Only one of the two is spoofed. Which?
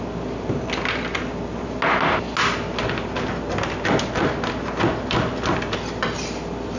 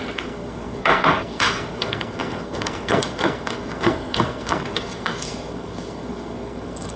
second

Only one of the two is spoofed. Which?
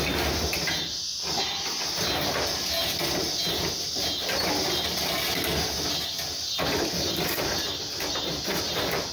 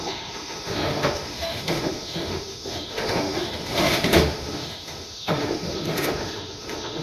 second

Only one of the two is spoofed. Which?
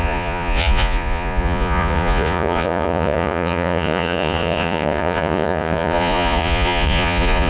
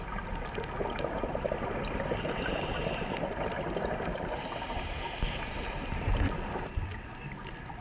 first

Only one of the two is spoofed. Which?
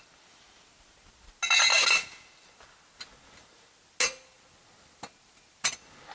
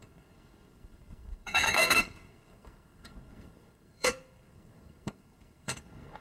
second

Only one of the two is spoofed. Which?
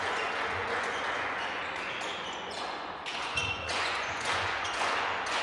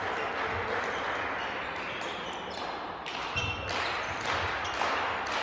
first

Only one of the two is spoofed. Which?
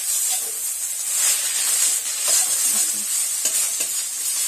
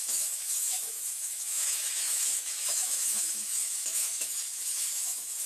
second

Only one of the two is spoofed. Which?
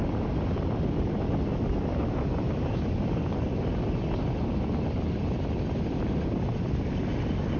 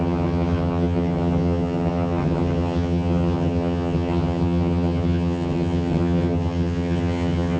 second